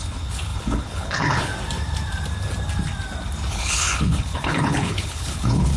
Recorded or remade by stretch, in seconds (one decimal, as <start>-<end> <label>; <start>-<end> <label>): 0.0-1.5 remade; 1.5-3.5 recorded; 3.5-5.8 remade